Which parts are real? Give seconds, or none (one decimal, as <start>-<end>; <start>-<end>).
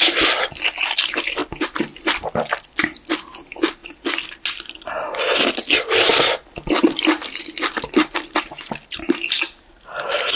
0.0-10.4